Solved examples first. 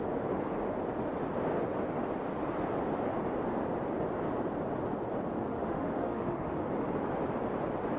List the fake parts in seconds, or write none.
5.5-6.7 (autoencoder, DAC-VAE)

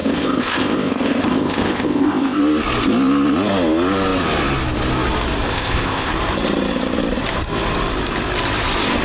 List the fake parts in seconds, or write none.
0.0-2.4 (codec, ZipCodec); 5.5-6.1

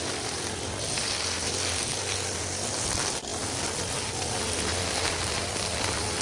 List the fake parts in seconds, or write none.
none

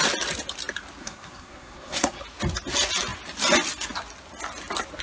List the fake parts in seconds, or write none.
1.0-2.2 (codec, SNAC)

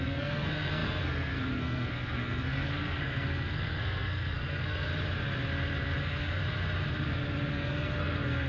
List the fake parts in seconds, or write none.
0.0-4.9 (codec, SNAC); 6.0-6.4; 7.5-8.5

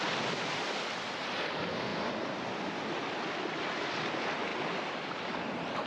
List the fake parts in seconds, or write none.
none

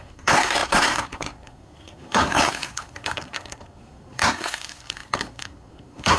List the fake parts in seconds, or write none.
0.0-6.2 (codec, SNAC)

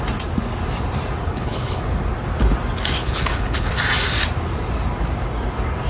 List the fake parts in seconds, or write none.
1.2-1.8 (codec, HILCodec); 3.0-3.7